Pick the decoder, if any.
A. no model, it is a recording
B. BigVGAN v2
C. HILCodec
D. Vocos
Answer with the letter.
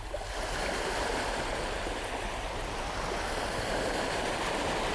A